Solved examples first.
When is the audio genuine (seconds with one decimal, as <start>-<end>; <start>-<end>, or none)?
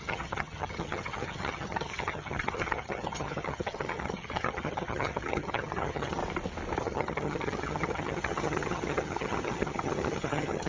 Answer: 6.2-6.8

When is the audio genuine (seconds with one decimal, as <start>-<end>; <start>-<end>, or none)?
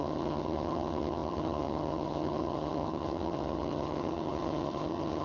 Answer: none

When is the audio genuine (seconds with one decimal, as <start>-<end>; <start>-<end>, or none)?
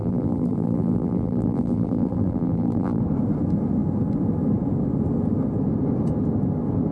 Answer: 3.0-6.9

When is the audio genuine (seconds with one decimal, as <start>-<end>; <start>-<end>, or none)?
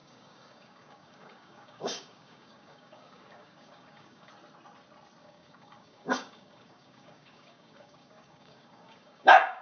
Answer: 4.3-5.2